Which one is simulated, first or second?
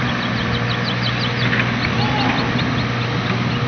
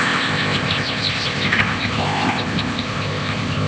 second